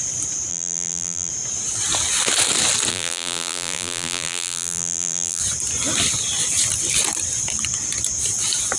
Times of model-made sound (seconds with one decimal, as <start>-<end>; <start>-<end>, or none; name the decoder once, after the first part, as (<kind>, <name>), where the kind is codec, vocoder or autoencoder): 0.5-1.3 (vocoder, BigVGAN v2); 2.9-5.4